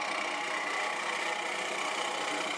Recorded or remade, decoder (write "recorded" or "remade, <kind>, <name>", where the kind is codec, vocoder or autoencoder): recorded